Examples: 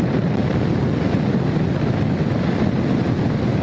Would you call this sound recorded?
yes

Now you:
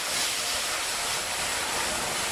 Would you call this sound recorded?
no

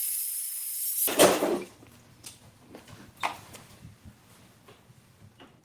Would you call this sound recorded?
yes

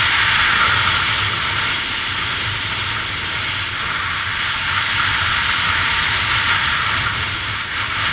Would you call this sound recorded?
yes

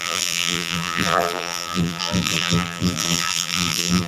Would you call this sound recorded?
no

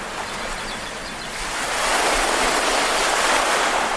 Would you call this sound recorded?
yes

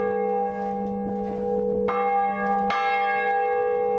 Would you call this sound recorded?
yes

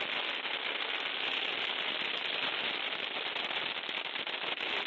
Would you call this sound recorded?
yes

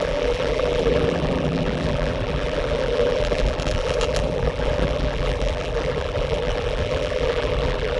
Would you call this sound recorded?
no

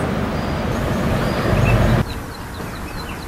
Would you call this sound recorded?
yes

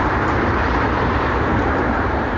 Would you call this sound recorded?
no